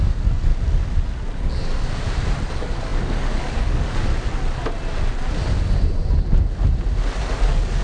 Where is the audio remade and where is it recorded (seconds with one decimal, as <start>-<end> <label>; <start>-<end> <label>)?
0.0-0.5 remade; 0.5-2.5 recorded; 2.5-4.1 remade; 4.1-7.2 recorded; 7.2-7.8 remade